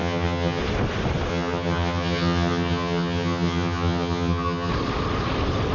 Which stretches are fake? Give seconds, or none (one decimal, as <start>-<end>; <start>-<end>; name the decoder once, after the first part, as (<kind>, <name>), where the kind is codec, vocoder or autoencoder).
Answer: 0.0-0.6 (vocoder, HiFi-GAN); 1.3-4.7

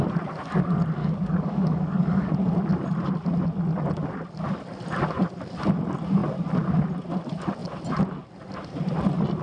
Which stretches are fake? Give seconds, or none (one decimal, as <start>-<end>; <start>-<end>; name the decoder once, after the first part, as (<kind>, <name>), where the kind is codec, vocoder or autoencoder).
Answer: 1.0-2.3 (codec, DAC)